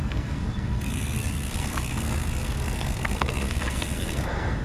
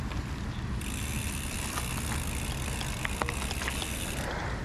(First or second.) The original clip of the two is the second